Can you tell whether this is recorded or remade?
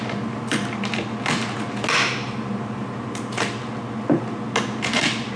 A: recorded